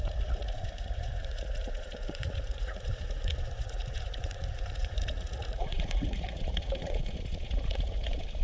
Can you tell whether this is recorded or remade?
remade